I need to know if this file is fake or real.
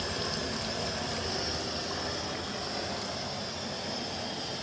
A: real